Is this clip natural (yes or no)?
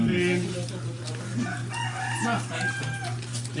yes